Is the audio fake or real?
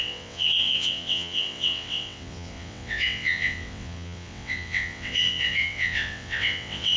fake